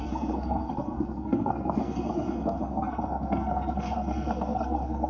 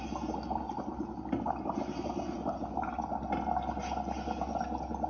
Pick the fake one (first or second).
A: first